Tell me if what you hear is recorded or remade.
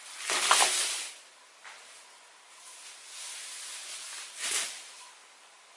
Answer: recorded